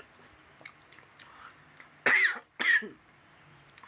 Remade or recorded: recorded